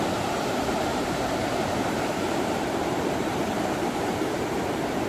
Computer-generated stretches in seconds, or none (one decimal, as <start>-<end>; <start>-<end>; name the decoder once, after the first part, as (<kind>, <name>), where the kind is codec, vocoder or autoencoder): 0.9-4.0 (vocoder, BigVGAN v2)